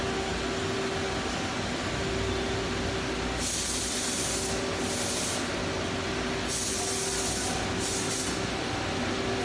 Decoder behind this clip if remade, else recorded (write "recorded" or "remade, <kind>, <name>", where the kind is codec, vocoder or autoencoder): recorded